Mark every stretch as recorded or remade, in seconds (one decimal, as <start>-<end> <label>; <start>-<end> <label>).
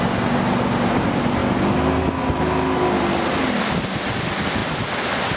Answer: 0.0-5.4 recorded